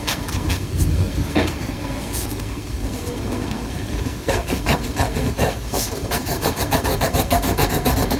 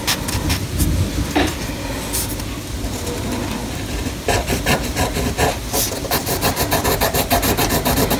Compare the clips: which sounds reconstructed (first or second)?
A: first